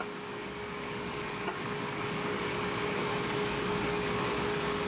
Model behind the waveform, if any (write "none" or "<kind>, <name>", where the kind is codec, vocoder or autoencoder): codec, DAC